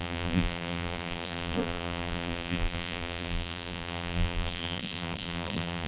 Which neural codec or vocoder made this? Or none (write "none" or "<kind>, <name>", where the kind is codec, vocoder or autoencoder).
vocoder, BigVGAN v2